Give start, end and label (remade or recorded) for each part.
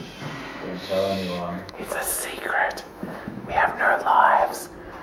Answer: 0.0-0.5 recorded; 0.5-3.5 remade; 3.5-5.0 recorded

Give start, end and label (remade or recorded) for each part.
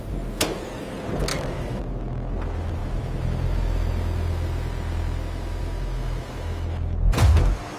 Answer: 0.0-1.3 recorded; 1.3-1.8 remade; 1.8-7.8 recorded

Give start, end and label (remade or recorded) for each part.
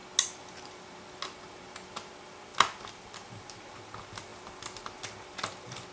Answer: 0.0-5.9 recorded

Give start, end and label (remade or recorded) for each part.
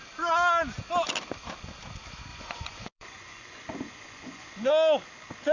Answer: 0.0-2.3 recorded; 2.3-4.7 remade; 4.7-5.5 recorded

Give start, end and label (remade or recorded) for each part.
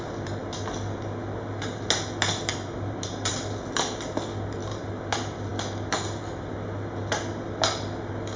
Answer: 0.0-2.5 recorded; 2.5-3.3 remade; 3.3-4.6 recorded; 4.6-5.1 remade; 5.1-8.4 recorded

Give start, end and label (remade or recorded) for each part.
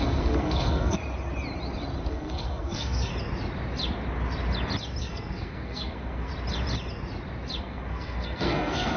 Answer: 0.0-1.0 remade; 1.0-2.1 recorded; 2.1-3.1 remade; 3.1-5.0 recorded; 5.0-6.3 remade; 6.3-7.6 recorded; 7.6-9.0 remade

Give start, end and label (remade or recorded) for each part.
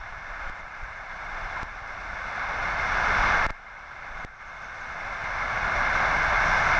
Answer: 0.0-1.3 remade; 1.3-3.5 recorded; 3.5-4.4 remade; 4.4-6.8 recorded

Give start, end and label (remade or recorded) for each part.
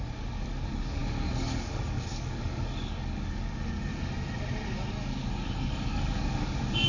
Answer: 0.0-3.9 remade; 3.9-4.9 recorded; 4.9-6.9 remade